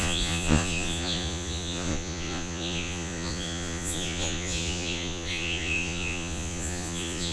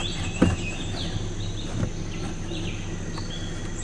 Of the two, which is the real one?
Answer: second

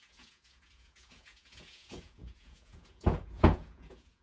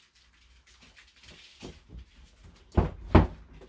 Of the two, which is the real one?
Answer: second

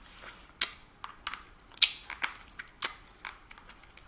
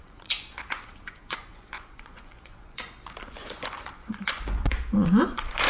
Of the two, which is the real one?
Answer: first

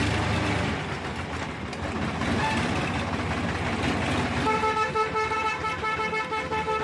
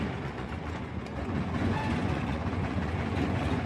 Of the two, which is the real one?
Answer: first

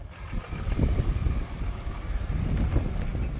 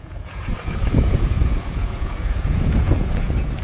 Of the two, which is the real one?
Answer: first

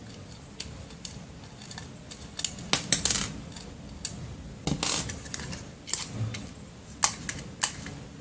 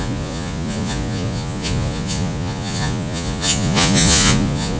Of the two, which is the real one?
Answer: first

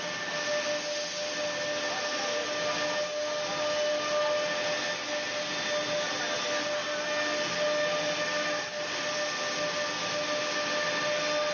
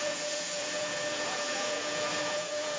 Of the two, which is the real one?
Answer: first